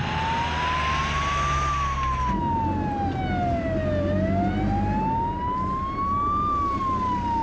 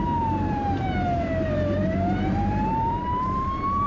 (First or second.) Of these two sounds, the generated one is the second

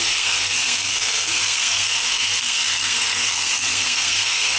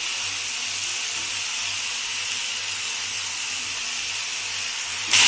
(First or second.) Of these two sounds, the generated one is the first